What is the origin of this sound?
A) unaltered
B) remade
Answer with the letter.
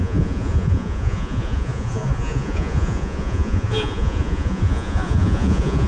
B